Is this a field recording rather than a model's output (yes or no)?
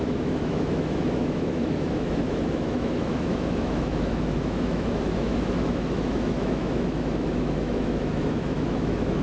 no